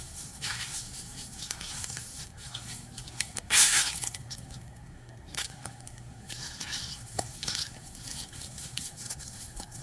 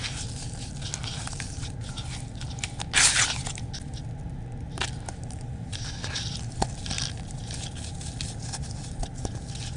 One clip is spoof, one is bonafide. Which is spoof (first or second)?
first